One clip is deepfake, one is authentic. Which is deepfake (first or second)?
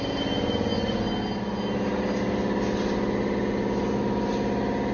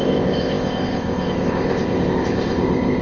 second